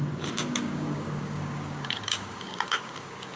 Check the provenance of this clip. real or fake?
fake